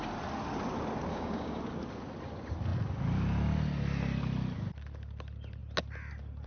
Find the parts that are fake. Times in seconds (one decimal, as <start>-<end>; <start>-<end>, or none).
1.1-1.6